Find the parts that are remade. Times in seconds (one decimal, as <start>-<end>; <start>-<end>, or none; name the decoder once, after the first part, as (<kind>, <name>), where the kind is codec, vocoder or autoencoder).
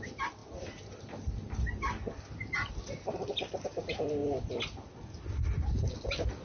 none